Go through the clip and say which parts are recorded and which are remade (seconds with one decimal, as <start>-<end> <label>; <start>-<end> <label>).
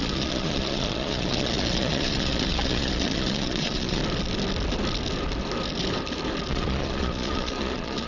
0.0-4.0 remade; 4.0-6.5 recorded; 6.5-8.1 remade